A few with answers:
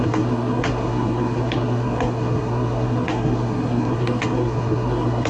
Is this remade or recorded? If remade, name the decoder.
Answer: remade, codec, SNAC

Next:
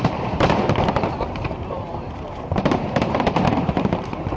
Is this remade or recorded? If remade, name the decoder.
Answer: remade, vocoder, BigVGAN v2